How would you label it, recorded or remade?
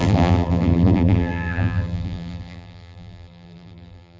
remade